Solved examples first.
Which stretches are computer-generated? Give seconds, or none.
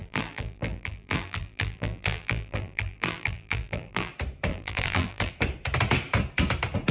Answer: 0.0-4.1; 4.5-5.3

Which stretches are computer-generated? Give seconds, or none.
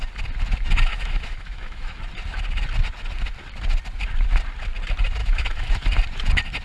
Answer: 0.9-2.0; 5.2-5.7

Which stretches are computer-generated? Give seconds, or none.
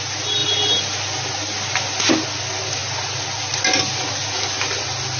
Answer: none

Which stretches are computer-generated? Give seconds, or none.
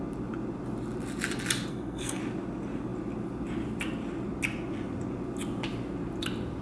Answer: 1.7-2.2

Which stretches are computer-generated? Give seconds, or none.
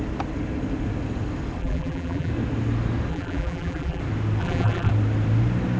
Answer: 1.6-2.3; 3.1-4.0; 4.4-4.9